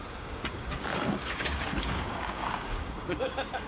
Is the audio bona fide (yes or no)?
no